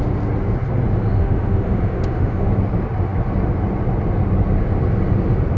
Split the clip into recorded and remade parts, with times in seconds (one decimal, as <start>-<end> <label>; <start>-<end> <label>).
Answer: 0.0-1.2 recorded; 1.2-2.5 remade; 2.5-5.6 recorded